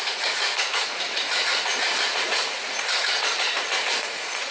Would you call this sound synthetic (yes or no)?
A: yes